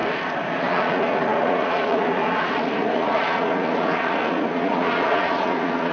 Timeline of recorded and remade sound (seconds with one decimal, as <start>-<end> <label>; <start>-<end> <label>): 0.0-0.6 recorded; 0.6-5.9 remade